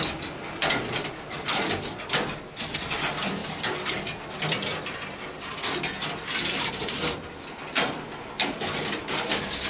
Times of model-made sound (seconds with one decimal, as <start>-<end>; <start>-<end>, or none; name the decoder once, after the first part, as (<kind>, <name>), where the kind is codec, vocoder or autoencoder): none